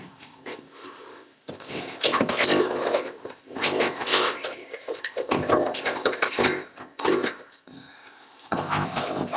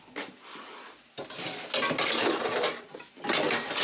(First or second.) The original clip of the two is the second